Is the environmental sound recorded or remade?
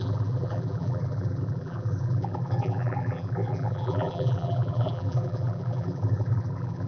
remade